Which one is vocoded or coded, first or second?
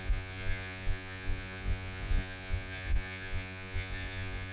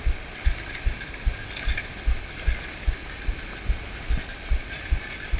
first